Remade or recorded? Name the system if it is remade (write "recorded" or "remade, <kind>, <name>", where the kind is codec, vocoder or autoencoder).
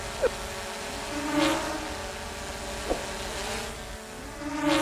recorded